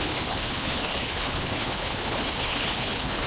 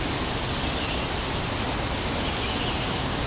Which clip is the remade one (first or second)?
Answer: first